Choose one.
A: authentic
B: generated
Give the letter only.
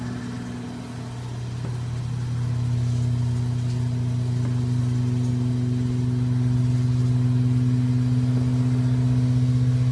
A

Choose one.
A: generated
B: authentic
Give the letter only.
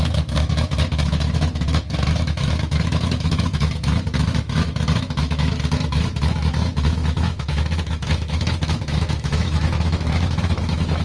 A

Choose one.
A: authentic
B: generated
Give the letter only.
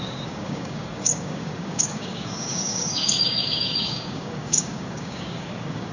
B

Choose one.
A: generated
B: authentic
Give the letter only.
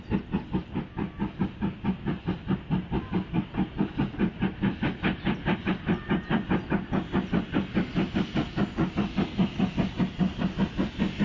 B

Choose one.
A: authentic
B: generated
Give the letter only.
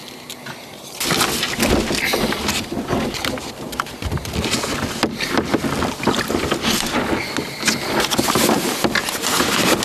A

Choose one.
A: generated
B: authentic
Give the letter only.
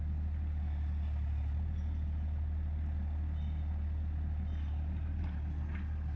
B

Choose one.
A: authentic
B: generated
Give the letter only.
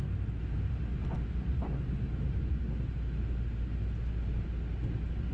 A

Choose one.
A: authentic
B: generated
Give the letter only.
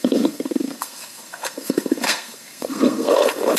B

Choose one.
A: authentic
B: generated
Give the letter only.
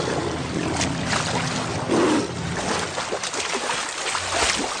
A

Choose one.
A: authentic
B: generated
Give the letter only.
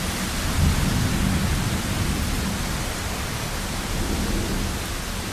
A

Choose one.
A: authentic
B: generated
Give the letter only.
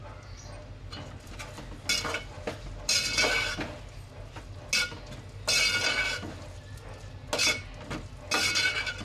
A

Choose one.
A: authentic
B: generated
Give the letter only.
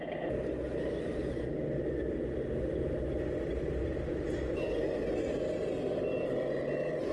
A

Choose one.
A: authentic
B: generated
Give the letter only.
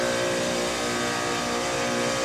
A